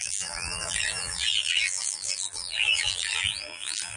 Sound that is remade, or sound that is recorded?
remade